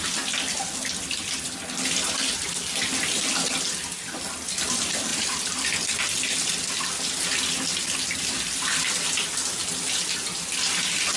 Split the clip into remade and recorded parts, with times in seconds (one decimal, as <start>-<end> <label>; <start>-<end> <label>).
0.0-11.2 recorded